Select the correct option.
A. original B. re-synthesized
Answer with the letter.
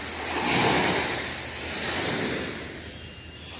A